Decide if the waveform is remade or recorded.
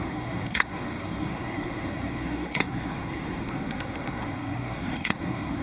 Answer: remade